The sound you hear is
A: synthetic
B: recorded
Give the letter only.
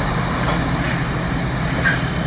B